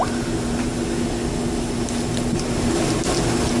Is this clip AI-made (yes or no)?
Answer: no